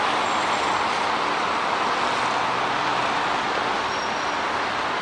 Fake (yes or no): no